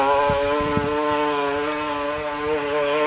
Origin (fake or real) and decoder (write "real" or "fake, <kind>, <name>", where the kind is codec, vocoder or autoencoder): real